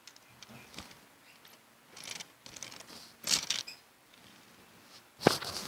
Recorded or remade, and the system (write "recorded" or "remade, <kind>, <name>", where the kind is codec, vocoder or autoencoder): recorded